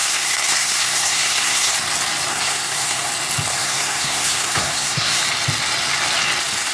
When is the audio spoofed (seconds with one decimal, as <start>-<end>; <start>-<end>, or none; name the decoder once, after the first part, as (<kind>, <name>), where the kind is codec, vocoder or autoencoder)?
0.0-1.7 (codec, SNAC); 2.3-3.1; 3.5-5.2

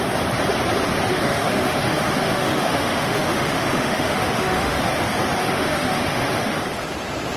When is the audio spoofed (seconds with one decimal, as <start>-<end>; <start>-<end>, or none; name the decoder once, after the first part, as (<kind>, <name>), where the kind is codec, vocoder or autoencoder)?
1.1-4.8 (autoencoder, DAC-VAE); 5.4-6.6

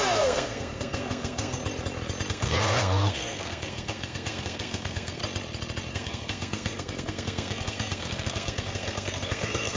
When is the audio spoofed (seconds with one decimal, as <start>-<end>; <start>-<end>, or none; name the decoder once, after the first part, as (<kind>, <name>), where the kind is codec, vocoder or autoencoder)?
0.0-1.6 (codec, SNAC); 2.3-5.2; 5.9-9.8

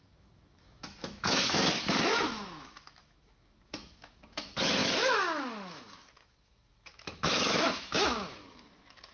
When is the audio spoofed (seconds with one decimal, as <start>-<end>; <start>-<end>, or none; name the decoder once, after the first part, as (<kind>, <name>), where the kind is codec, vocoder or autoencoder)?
0.0-9.1 (autoencoder, DAC-VAE)

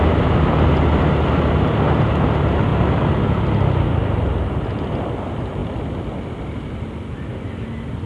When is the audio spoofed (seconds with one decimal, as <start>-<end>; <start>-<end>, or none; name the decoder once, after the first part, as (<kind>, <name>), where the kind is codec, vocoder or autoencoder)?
none

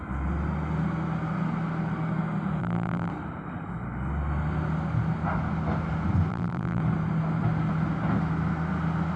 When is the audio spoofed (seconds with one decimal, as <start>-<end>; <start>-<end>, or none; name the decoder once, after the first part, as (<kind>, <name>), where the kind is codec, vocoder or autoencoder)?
2.6-3.1 (vocoder, BigVGAN v2); 6.3-6.8

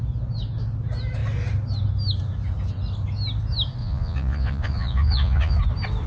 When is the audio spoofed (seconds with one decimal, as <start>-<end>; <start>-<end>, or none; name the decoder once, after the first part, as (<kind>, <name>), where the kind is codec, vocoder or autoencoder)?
3.8-5.6 (vocoder, Vocos)

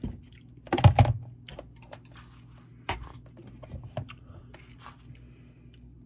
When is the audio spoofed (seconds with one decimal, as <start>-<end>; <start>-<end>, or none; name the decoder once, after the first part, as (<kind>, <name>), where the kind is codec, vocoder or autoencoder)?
none